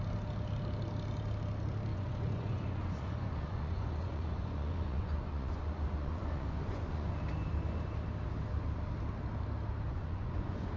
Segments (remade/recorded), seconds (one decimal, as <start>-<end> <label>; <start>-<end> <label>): 0.0-1.9 recorded; 1.9-7.2 remade; 7.2-9.9 recorded; 9.9-10.8 remade